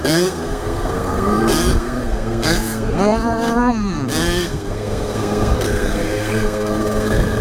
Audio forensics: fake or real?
fake